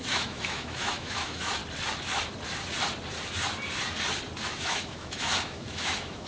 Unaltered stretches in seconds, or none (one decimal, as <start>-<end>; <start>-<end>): 1.6-4.5